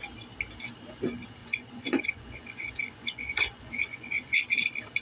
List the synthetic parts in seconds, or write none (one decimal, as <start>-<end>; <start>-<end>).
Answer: 1.4-4.4